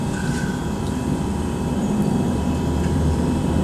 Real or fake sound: fake